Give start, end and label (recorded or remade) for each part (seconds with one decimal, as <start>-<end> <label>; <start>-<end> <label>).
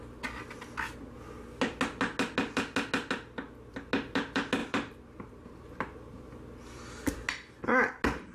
0.0-4.6 recorded; 4.6-6.3 remade; 6.3-8.3 recorded